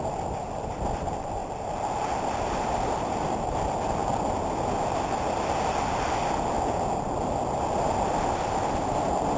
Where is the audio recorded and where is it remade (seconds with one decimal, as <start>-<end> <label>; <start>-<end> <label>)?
0.0-1.4 remade; 1.4-2.4 recorded; 2.4-4.0 remade; 4.0-7.6 recorded; 7.6-9.4 remade